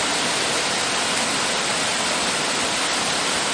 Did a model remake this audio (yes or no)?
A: no